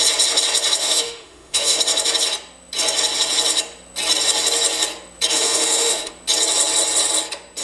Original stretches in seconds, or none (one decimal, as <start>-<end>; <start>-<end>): 0.0-0.8; 1.8-5.3; 6.1-7.6